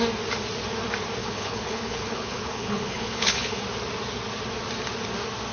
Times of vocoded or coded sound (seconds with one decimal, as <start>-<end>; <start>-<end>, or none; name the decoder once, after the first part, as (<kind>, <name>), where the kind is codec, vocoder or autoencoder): 1.2-3.6 (codec, HILCodec)